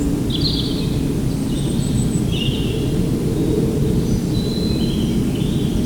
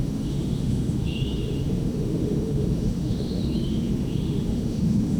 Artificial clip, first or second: second